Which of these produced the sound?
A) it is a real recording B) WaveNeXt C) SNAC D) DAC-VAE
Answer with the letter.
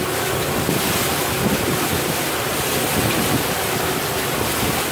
A